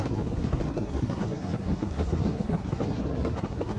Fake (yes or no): yes